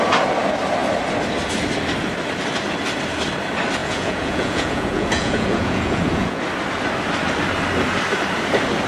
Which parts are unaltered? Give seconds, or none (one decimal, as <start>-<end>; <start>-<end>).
0.0-3.8; 6.4-8.9